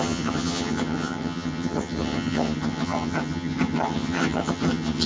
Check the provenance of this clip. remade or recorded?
remade